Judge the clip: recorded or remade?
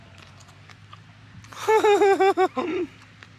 recorded